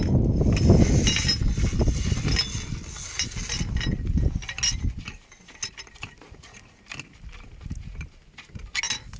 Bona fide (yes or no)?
yes